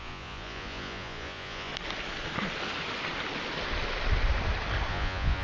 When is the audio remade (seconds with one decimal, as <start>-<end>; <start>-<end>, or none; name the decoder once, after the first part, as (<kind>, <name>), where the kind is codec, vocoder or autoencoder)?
0.0-1.7 (vocoder, Vocos); 4.9-5.4